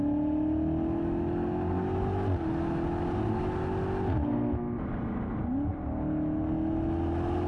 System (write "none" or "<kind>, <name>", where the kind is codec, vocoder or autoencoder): none